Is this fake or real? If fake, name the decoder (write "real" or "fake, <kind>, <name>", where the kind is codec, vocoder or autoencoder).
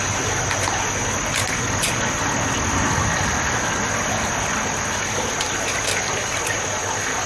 real